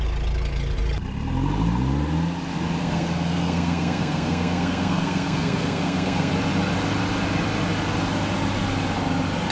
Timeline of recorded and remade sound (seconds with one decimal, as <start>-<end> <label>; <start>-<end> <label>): 0.0-2.8 recorded; 2.8-6.3 remade; 6.3-9.5 recorded